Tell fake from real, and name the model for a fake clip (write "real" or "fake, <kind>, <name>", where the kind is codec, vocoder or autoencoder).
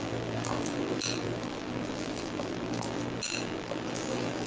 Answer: fake, vocoder, BigVGAN v2